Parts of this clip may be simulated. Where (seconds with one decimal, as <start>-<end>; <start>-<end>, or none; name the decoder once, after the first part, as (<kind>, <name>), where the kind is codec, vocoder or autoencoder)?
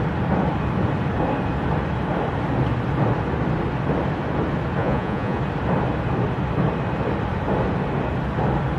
4.8-5.4 (vocoder, Vocos)